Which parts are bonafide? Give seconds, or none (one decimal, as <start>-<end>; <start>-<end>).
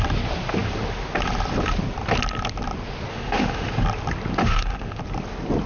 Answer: 0.0-3.1; 3.7-4.4; 5.0-5.7